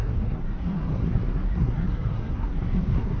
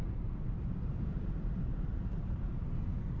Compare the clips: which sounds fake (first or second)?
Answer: first